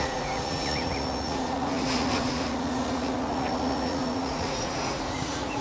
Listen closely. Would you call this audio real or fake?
fake